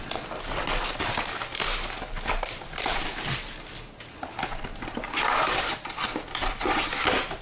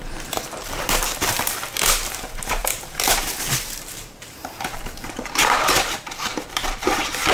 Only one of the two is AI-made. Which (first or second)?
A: second